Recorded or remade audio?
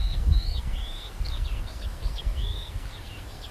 remade